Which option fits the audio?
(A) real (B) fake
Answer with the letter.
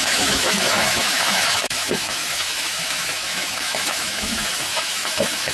B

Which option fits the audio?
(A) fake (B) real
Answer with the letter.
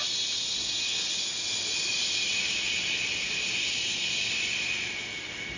B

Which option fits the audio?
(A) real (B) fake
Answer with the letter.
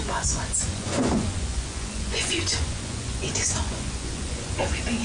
B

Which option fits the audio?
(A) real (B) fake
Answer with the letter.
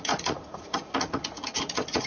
B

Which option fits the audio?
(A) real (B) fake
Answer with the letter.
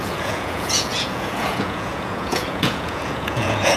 B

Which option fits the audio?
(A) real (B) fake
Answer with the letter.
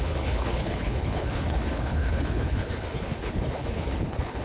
B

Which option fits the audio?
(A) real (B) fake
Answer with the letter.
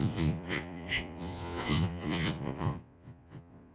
B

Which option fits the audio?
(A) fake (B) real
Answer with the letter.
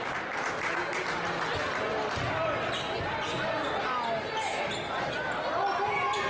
B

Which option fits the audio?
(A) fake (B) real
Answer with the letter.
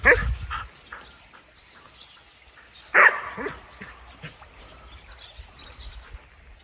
B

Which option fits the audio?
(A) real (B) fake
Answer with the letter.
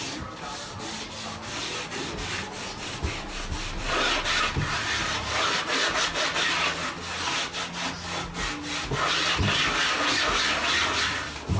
A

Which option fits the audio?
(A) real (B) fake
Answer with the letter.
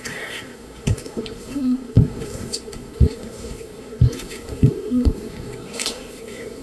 B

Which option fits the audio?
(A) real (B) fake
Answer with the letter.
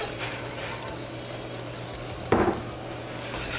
A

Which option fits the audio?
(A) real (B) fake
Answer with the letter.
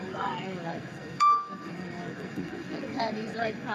B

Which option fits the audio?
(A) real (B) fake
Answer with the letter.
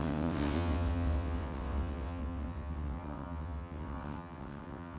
B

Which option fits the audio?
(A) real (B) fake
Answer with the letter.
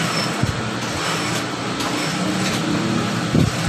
A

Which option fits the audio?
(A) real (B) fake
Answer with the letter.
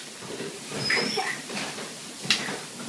B